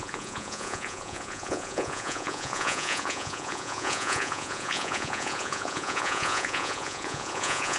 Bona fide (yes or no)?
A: no